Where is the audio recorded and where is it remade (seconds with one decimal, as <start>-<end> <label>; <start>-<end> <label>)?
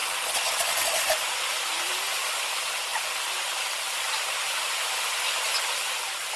0.0-0.7 recorded; 0.7-6.4 remade